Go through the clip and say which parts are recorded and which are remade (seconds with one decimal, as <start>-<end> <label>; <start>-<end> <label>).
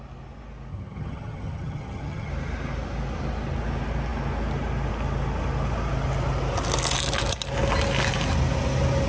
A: 0.0-0.7 recorded; 0.7-2.3 remade; 2.3-9.1 recorded